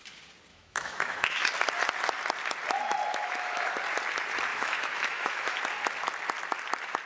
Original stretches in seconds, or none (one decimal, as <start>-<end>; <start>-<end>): 0.0-0.5; 1.5-3.1; 3.7-4.5; 5.6-7.1